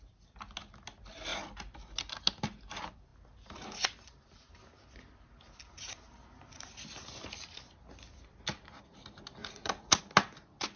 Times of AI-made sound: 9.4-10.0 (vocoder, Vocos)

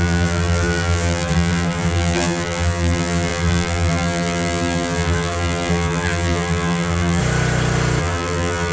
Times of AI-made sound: 0.0-7.2 (vocoder, BigVGAN v2); 8.0-8.7

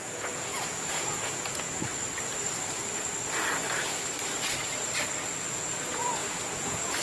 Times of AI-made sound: 0.0-1.9 (vocoder, Vocos); 5.5-7.0

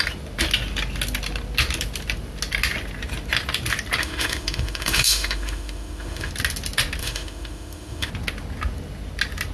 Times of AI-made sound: 4.0-6.3 (autoencoder, DAC-VAE); 7.0-8.1

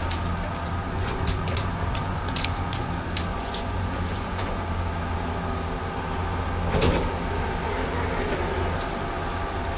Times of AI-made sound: 0.8-2.9 (vocoder, Vocos); 3.3-4.6

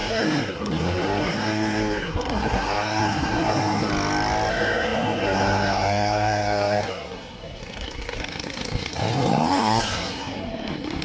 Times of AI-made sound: 0.0-3.9 (codec, SNAC); 4.5-11.0

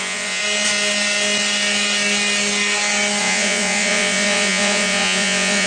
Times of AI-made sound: 0.0-0.4 (vocoder, Vocos); 3.2-5.7